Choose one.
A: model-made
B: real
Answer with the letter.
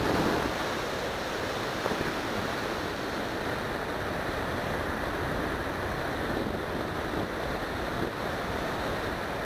B